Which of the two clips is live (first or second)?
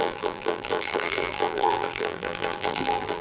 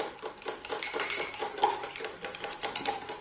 second